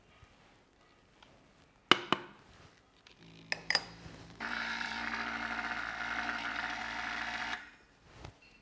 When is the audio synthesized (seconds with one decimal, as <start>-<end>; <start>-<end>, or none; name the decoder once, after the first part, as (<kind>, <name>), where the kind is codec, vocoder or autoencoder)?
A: 3.6-5.1 (vocoder, BigVGAN v2)